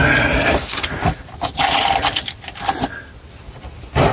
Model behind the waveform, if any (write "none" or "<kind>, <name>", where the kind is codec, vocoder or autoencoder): none